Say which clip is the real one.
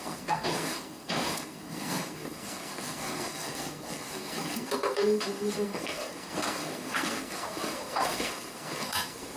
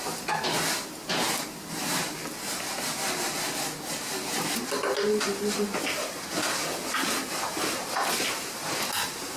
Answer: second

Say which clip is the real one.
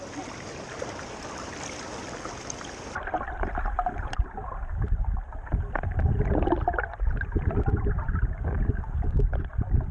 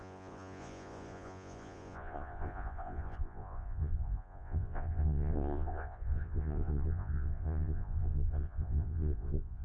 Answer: first